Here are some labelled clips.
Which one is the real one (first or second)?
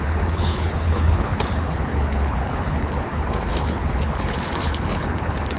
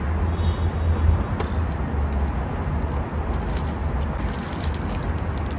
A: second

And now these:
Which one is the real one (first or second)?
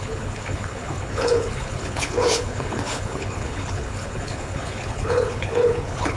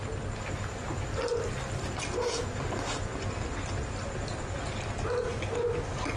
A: second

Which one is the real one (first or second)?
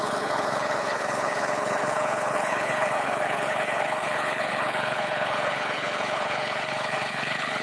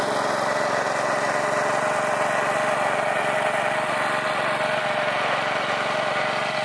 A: second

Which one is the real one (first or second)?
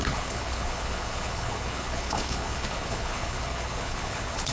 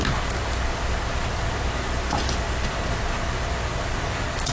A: second